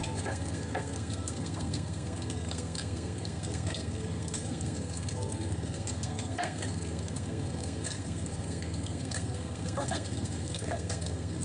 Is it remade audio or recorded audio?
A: remade